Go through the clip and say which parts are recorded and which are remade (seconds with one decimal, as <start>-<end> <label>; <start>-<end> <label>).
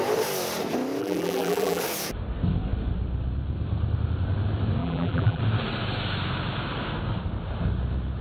0.0-1.0 recorded; 1.0-1.8 remade; 1.8-4.8 recorded; 4.8-5.4 remade; 5.4-8.2 recorded